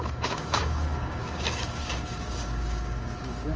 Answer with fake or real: fake